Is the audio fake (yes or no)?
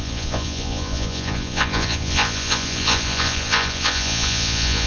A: yes